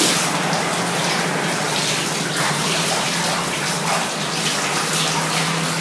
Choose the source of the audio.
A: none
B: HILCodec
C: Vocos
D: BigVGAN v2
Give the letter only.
A